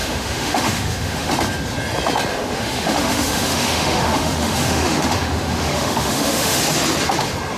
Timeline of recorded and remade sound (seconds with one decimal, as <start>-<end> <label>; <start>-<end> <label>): 0.0-1.3 remade; 1.3-2.3 recorded; 2.3-6.6 remade; 6.6-7.6 recorded

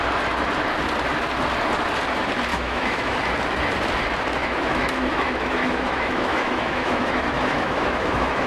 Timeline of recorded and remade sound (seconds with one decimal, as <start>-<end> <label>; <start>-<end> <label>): 0.0-2.5 recorded; 2.5-3.2 remade; 3.2-4.4 recorded; 4.4-8.5 remade

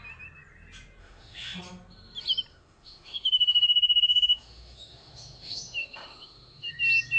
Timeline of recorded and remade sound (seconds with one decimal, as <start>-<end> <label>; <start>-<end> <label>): 0.0-1.0 recorded; 1.0-1.6 remade; 1.6-2.5 recorded; 2.5-6.8 remade; 6.8-7.2 recorded